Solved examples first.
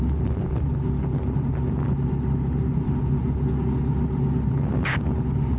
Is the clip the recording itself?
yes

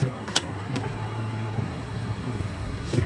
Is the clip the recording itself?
no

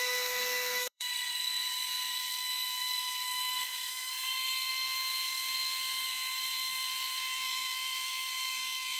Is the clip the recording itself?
no